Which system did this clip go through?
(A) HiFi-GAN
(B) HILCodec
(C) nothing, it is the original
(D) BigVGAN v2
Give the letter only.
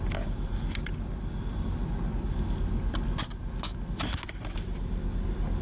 C